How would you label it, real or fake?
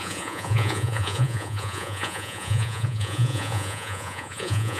fake